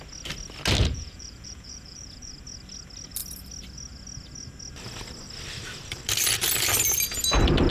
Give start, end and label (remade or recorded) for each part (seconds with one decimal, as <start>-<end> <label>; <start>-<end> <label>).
0.0-0.8 recorded; 0.8-2.3 remade; 2.3-7.7 recorded